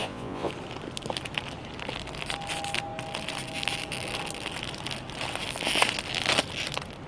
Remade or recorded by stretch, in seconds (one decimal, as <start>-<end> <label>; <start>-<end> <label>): 0.0-0.5 remade; 0.5-7.1 recorded